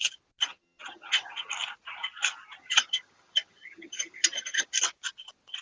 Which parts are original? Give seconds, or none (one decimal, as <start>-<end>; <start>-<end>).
0.0-0.5; 1.5-2.6; 4.7-5.6